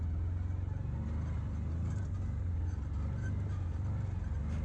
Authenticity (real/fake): real